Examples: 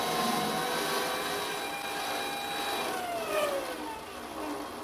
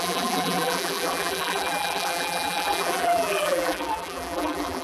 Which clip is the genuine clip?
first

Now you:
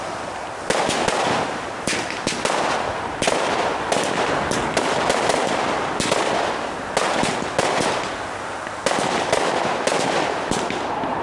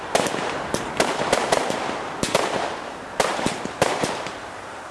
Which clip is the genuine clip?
first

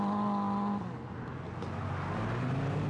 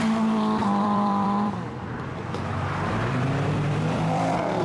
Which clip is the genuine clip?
first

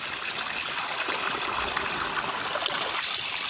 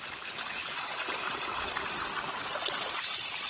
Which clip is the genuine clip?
first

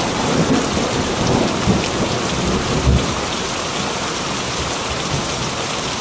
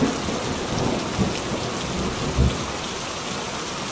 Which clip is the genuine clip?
second